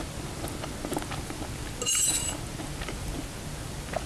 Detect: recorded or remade recorded